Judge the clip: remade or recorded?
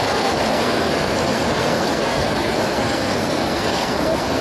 remade